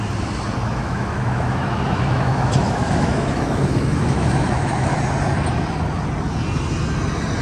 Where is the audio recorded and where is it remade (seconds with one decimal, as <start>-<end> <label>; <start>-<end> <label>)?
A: 0.0-0.6 recorded; 0.6-5.0 remade; 5.0-7.4 recorded